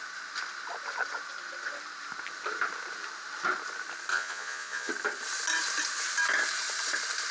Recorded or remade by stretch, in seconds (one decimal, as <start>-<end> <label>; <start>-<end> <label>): 0.0-4.1 recorded; 4.1-4.9 remade; 4.9-7.3 recorded